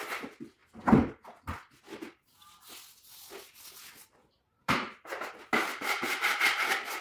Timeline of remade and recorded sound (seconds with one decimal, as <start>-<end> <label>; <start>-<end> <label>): 0.0-4.0 recorded; 4.0-5.3 remade; 5.3-5.7 recorded; 5.7-6.4 remade; 6.4-7.0 recorded

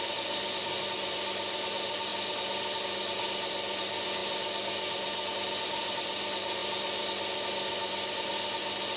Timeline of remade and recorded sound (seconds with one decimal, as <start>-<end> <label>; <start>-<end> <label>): 0.0-9.0 recorded

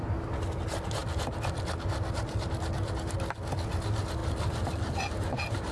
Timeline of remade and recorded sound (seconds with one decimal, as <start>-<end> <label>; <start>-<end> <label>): 0.0-1.0 recorded; 1.0-2.9 remade; 2.9-4.2 recorded; 4.2-4.9 remade; 4.9-5.7 recorded

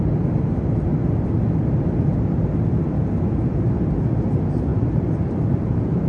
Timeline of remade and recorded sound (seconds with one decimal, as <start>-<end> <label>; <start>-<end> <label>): 0.0-4.7 recorded; 4.7-6.1 remade

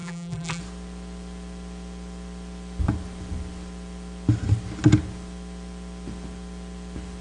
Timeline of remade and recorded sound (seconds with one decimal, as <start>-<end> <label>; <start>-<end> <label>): 0.0-0.6 remade; 0.6-7.2 recorded

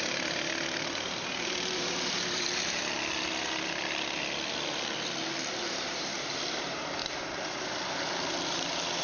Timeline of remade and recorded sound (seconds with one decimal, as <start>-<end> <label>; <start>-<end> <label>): 0.0-2.8 remade; 2.8-5.6 recorded; 5.6-7.0 remade; 7.0-8.4 recorded; 8.4-9.0 remade